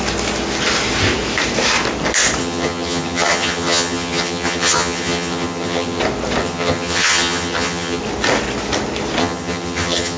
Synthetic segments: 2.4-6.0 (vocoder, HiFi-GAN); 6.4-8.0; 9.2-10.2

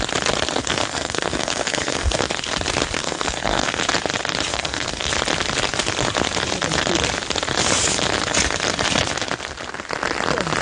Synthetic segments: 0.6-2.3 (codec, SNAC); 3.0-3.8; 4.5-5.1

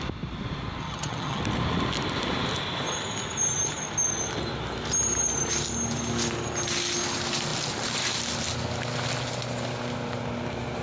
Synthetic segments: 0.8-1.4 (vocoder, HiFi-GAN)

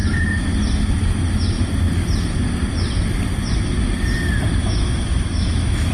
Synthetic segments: 4.6-5.9 (autoencoder, DAC-VAE)

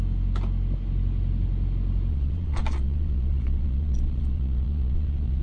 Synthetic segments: 2.1-5.4 (vocoder, Vocos)

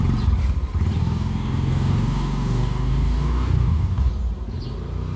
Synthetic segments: 1.0-4.1 (codec, DAC)

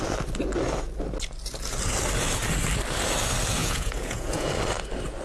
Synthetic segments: 3.6-4.5 (vocoder, Vocos)